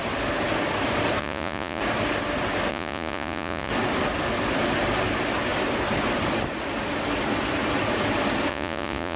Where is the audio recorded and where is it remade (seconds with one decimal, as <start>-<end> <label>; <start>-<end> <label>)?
0.0-1.2 recorded; 1.2-1.8 remade; 1.8-2.7 recorded; 2.7-3.7 remade; 3.7-8.5 recorded; 8.5-9.2 remade